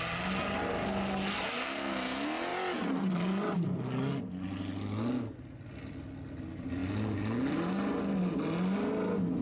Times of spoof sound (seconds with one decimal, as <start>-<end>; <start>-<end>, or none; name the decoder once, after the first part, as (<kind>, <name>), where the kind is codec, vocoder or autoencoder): none